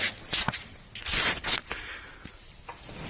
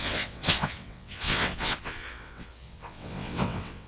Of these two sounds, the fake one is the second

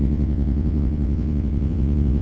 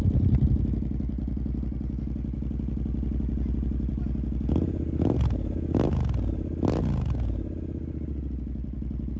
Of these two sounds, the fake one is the first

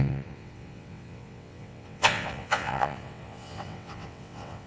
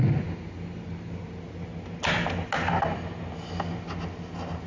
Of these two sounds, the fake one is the first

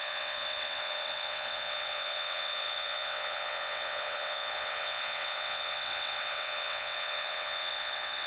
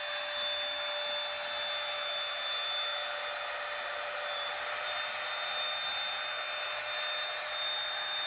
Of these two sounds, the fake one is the first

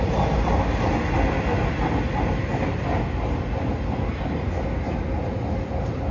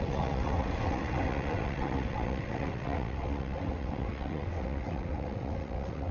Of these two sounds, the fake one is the second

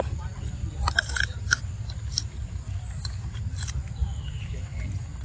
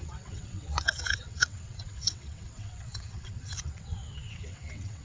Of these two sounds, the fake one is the second